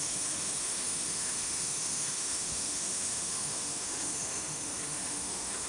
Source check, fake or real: fake